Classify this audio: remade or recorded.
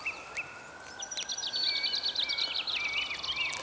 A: recorded